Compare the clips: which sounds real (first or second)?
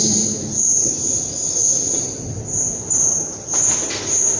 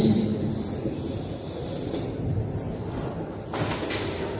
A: first